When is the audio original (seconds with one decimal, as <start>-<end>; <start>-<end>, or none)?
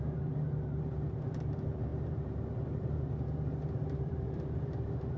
none